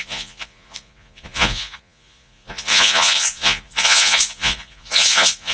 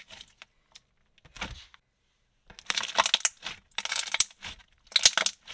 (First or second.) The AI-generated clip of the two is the first